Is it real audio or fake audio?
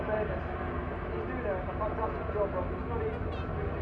real